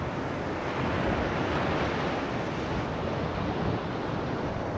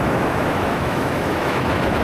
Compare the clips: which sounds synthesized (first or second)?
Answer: second